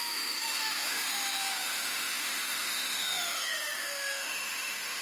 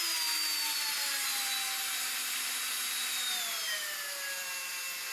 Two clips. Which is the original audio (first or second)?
second